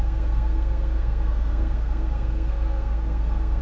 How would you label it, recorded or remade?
remade